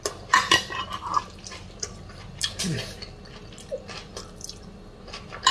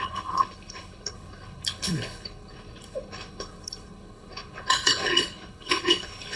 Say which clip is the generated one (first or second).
second